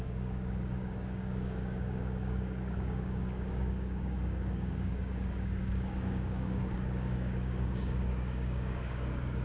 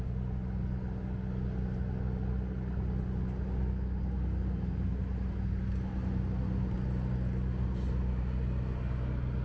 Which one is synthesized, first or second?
first